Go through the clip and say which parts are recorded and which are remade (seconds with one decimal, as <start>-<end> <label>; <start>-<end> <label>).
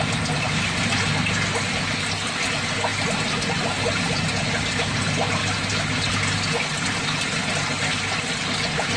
0.0-9.0 recorded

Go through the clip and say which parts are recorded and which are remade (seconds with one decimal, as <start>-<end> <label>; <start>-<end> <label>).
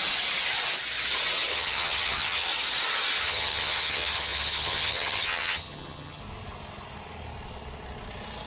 0.0-1.5 recorded; 1.5-2.5 remade; 2.5-3.2 recorded; 3.2-6.2 remade; 6.2-8.5 recorded